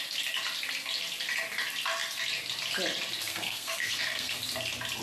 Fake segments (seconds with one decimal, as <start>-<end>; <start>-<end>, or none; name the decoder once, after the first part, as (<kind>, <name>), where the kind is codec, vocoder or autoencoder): 3.3-4.4 (codec, SNAC)